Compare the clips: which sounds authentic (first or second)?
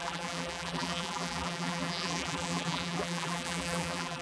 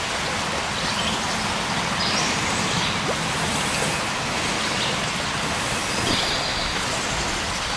second